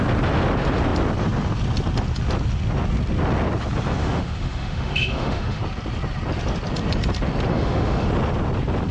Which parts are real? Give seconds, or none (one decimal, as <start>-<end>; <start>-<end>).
0.0-4.0; 5.6-7.5; 8.1-8.9